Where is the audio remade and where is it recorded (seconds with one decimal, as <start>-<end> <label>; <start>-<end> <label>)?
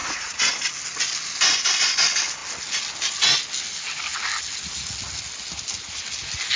0.0-0.7 remade; 0.7-6.6 recorded